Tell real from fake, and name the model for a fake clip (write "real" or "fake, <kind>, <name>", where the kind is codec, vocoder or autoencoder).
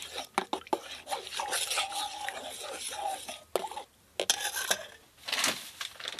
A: real